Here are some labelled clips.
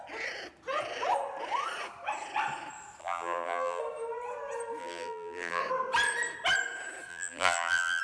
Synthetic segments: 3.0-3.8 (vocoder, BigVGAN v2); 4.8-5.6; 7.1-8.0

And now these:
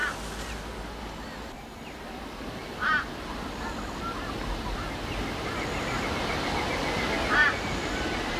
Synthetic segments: none

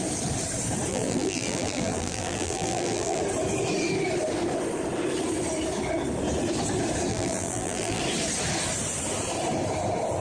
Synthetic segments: 0.9-3.2 (vocoder, BigVGAN v2); 7.1-8.0

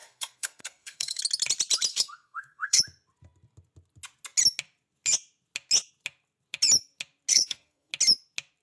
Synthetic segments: 0.0-1.2 (codec, SNAC); 1.9-2.8; 7.3-7.9

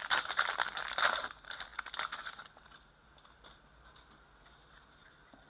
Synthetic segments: none